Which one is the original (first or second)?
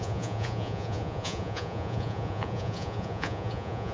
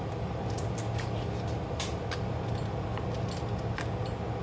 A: second